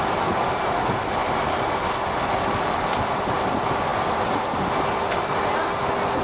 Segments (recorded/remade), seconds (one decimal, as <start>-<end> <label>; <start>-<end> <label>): 0.0-6.2 recorded